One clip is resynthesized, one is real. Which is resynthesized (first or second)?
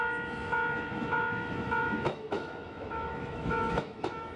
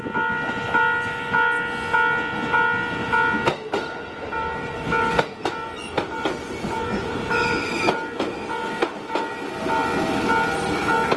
first